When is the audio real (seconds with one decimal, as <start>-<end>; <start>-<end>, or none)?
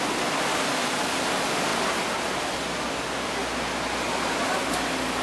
0.0-5.2